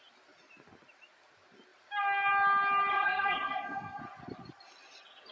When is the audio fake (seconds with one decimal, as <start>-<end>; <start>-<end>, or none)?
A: 2.9-4.0